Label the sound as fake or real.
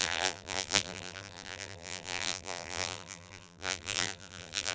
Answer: fake